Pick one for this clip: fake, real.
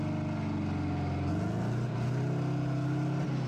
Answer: real